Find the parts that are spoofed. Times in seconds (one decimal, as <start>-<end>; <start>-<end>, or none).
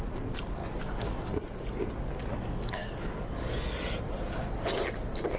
0.6-1.3; 2.3-3.8